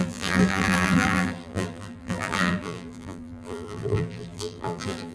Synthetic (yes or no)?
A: yes